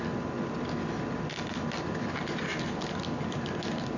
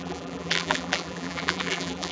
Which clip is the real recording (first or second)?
first